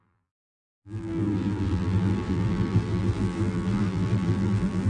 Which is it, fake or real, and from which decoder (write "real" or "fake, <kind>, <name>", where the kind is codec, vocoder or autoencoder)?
fake, vocoder, BigVGAN v2